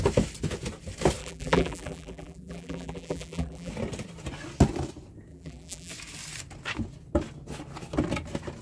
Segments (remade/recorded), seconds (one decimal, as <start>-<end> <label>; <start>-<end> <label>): 0.0-1.2 recorded; 1.2-3.7 remade; 3.7-5.3 recorded; 5.3-5.9 remade; 5.9-8.6 recorded